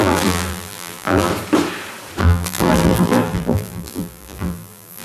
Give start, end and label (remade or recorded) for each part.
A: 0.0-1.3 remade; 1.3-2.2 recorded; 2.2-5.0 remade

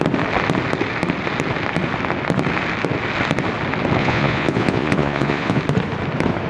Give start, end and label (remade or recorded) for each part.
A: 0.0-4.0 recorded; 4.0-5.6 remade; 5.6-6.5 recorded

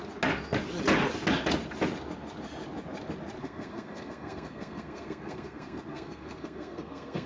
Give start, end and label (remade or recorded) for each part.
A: 0.0-3.4 recorded; 3.4-7.3 remade

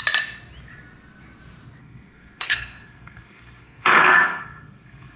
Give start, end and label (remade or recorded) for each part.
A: 0.0-1.8 recorded; 1.8-5.2 remade

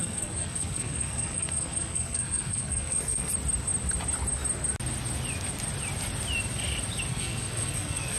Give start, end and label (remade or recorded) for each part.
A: 0.0-3.3 remade; 3.3-7.1 recorded; 7.1-8.2 remade

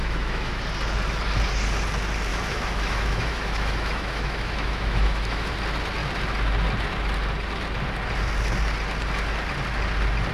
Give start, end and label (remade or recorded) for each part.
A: 0.0-0.6 remade; 0.6-2.3 recorded; 2.3-5.5 remade; 5.5-10.3 recorded

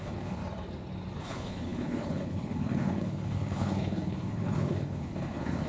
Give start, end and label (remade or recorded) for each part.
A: 0.0-0.4 remade; 0.4-1.2 recorded; 1.2-5.7 remade